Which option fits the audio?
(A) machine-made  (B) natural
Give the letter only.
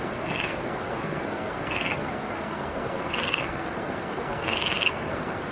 A